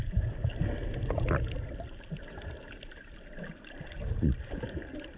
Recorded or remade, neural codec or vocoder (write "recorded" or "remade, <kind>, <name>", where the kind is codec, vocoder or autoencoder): recorded